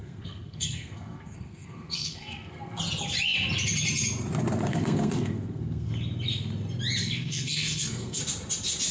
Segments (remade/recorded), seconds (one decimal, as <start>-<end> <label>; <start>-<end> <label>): 0.0-2.8 remade; 2.8-4.7 recorded; 4.7-5.9 remade; 5.9-7.0 recorded; 7.0-8.2 remade; 8.2-8.9 recorded